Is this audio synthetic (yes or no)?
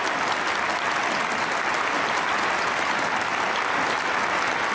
no